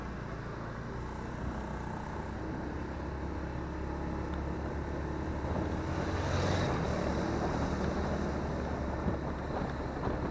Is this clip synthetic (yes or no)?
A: no